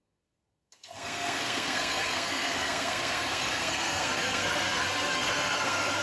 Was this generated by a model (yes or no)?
yes